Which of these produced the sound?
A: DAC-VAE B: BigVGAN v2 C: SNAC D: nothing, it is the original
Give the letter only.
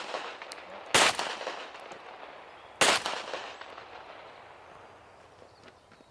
D